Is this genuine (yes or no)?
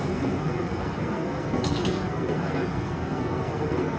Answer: no